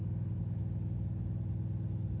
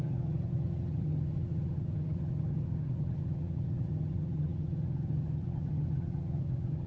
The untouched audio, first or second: first